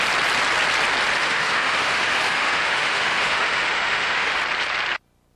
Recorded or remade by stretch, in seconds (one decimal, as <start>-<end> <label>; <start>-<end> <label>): 0.0-1.2 recorded; 1.2-4.4 remade; 4.4-5.4 recorded

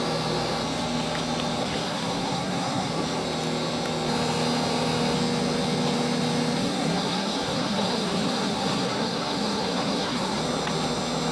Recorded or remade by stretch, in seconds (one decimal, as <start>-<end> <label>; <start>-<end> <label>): 0.0-1.6 recorded; 1.6-2.9 remade; 2.9-6.6 recorded; 6.6-10.4 remade; 10.4-11.3 recorded

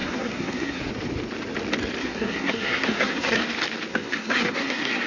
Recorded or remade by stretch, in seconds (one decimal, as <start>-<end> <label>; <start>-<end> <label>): 0.0-0.9 remade; 0.9-2.0 recorded; 2.0-3.4 remade; 3.4-3.9 recorded; 3.9-5.1 remade

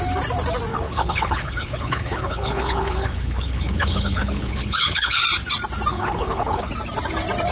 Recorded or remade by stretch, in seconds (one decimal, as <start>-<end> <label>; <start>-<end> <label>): 0.0-0.7 recorded; 0.7-5.2 remade; 5.2-5.9 recorded; 5.9-6.7 remade; 6.7-7.5 recorded

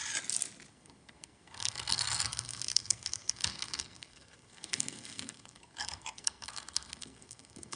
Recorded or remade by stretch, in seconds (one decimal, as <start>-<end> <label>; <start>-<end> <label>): 0.0-0.7 recorded; 0.7-7.8 remade

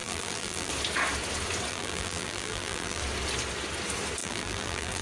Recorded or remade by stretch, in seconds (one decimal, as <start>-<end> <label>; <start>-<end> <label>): 0.0-0.7 remade; 0.7-1.7 recorded; 1.7-3.0 remade; 3.0-4.2 recorded; 4.2-5.0 remade